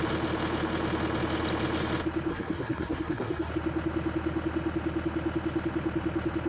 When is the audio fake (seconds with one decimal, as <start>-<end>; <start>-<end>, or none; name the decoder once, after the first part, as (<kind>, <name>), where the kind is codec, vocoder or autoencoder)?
2.3-3.5 (codec, SNAC)